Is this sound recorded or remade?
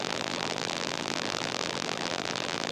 remade